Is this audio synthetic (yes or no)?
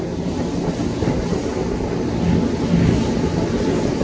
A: no